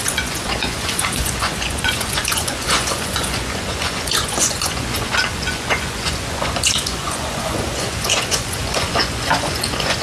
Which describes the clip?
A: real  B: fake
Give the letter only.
B